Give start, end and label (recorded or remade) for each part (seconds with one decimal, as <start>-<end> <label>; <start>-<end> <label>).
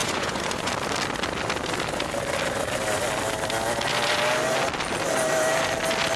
0.0-0.7 remade; 0.7-6.2 recorded